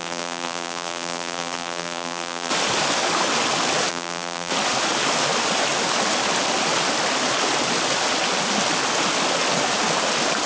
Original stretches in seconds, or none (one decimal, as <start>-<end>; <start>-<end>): 2.5-3.9; 4.5-10.5